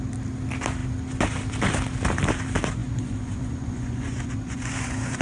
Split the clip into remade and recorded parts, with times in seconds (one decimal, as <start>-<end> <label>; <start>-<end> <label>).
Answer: 0.0-2.8 recorded; 2.8-5.2 remade